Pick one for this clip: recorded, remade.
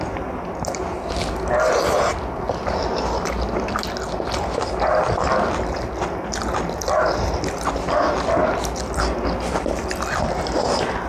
recorded